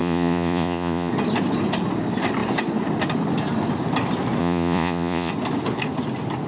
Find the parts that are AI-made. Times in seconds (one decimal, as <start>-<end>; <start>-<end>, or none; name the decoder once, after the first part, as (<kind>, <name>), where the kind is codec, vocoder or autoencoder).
0.0-1.1 (vocoder, Vocos); 4.4-5.3